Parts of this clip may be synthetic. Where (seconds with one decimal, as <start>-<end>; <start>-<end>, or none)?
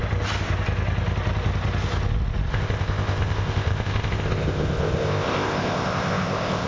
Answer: 2.5-6.7